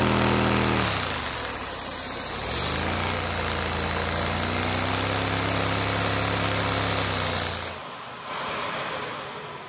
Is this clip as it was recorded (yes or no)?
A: yes